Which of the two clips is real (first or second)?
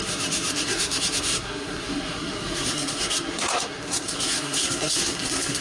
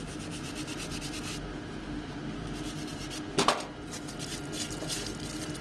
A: second